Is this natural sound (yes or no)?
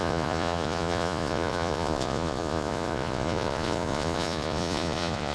no